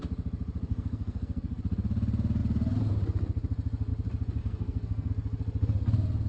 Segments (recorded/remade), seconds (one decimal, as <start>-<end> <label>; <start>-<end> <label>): 0.0-0.7 recorded; 0.7-1.6 remade; 1.6-4.4 recorded; 4.4-5.1 remade; 5.1-6.3 recorded